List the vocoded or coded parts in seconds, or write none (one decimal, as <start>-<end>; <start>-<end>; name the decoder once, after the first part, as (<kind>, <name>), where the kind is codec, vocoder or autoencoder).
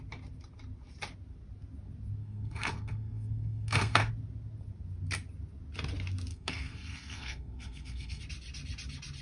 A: 2.2-4.1 (codec, SNAC); 6.3-8.2